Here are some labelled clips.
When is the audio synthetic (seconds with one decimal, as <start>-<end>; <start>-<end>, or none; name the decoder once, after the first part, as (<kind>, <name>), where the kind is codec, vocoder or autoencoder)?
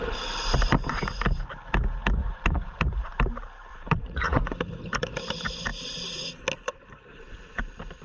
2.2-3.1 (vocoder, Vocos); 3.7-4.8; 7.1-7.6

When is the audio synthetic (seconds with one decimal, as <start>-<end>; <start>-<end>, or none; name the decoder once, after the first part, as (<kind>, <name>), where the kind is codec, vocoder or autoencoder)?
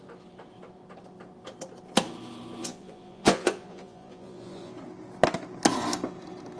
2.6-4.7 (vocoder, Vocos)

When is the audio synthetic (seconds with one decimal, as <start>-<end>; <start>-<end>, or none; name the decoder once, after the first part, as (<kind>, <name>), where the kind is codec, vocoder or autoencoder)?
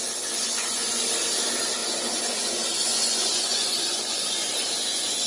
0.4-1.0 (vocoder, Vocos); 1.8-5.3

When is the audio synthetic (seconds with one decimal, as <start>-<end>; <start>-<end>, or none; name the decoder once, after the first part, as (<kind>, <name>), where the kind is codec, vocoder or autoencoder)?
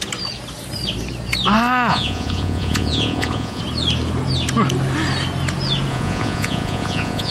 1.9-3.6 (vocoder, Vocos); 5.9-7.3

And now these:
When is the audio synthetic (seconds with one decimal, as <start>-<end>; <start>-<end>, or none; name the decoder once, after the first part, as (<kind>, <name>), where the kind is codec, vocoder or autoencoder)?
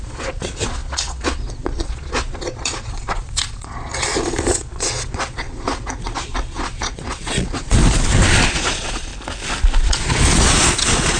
0.0-7.8 (vocoder, Vocos); 8.5-9.1; 9.8-11.2